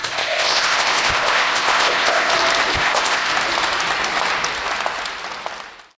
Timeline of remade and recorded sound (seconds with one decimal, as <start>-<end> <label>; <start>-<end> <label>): 0.0-2.3 remade; 2.3-2.7 recorded; 2.7-3.3 remade; 3.3-6.0 recorded